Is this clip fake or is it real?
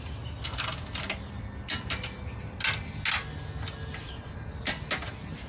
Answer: real